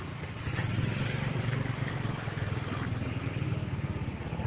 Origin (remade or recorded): recorded